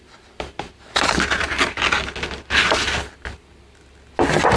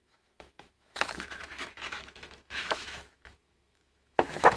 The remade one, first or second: second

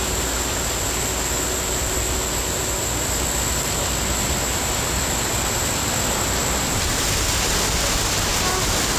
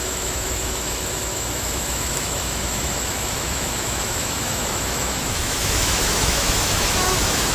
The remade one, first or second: second